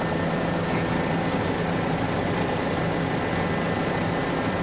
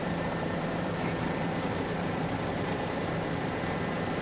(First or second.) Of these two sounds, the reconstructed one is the second